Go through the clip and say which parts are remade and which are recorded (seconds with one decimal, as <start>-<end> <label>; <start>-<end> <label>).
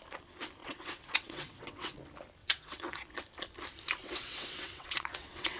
0.0-0.6 recorded; 0.6-2.0 remade; 2.0-2.4 recorded; 2.4-3.2 remade; 3.2-4.0 recorded; 4.0-5.6 remade